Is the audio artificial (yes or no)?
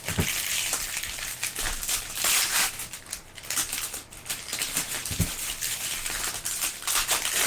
yes